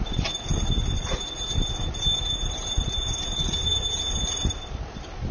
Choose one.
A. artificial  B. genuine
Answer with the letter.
B